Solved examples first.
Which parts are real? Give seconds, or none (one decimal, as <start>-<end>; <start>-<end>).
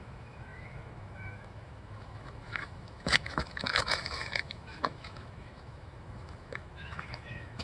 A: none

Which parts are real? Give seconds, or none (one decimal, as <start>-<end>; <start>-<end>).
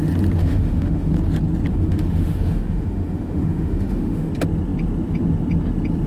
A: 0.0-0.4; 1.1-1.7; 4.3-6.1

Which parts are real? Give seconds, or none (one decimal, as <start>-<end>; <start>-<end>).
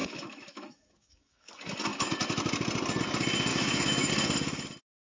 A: 1.5-3.5; 4.1-5.1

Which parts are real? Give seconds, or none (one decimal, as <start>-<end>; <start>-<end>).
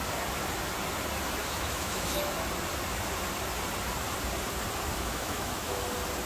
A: 0.0-1.4; 2.3-4.9; 5.8-6.3